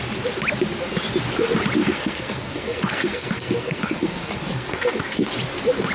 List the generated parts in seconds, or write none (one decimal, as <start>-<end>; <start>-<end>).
1.8-5.3